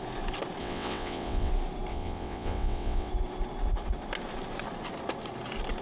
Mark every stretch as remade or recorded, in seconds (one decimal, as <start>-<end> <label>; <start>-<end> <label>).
0.0-0.6 recorded; 0.6-1.5 remade; 1.5-1.9 recorded; 1.9-3.1 remade; 3.1-5.8 recorded